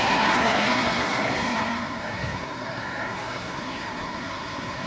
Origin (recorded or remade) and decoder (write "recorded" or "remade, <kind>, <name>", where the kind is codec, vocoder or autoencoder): remade, codec, SNAC